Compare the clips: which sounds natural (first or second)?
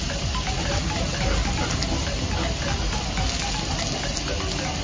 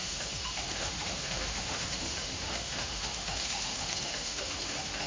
first